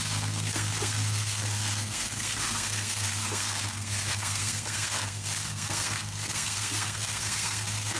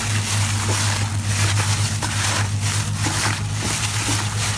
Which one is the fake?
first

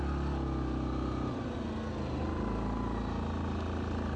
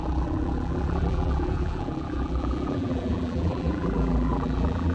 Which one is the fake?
second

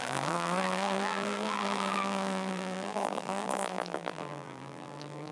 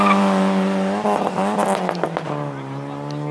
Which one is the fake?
first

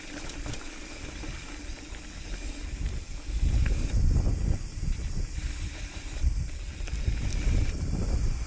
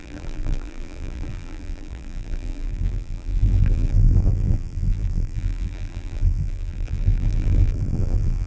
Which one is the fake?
second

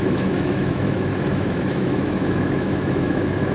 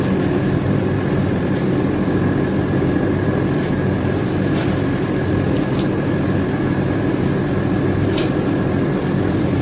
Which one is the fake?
first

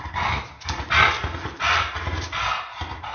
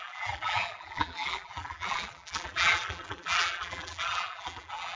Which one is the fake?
second